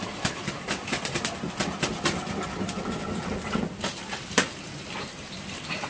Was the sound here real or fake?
real